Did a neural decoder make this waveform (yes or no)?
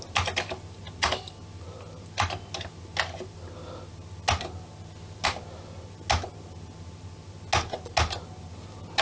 no